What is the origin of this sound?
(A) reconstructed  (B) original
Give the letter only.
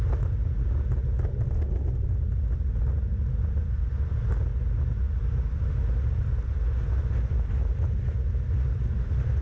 B